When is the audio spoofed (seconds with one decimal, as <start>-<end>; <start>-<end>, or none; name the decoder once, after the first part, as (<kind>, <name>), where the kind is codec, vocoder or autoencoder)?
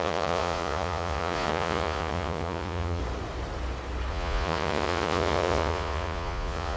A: 0.0-3.0 (vocoder, Vocos); 4.1-6.8